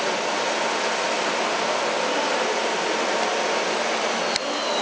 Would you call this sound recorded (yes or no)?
yes